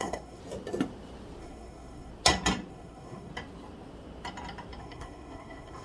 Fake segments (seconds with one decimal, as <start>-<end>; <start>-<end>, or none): 0.0-0.4; 1.4-2.1; 2.7-3.3; 4.8-5.8